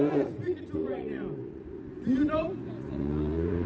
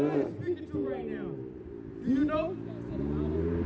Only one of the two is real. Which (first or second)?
second